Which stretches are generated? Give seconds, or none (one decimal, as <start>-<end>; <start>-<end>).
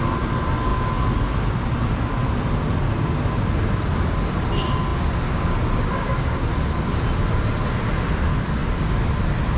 none